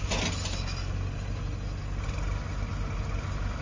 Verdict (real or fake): real